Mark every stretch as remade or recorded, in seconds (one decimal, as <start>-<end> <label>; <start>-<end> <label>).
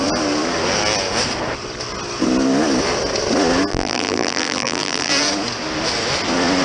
0.0-3.7 recorded; 3.7-5.1 remade; 5.1-6.6 recorded